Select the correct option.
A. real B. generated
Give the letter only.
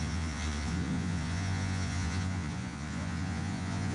B